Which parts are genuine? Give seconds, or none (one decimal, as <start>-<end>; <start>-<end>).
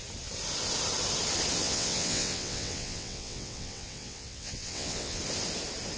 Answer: 0.0-1.6; 5.2-6.0